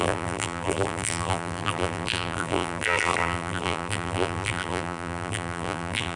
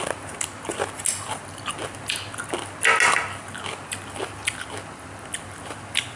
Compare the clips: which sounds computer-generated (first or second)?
first